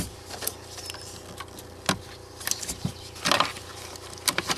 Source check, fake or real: real